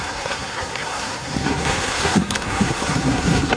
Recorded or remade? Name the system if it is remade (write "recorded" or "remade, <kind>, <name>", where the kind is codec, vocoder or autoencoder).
remade, codec, SNAC